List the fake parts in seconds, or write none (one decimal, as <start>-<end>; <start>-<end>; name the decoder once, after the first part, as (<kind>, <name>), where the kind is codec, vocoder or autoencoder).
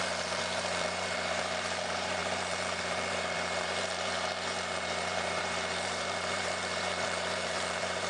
0.0-8.1 (vocoder, BigVGAN v2)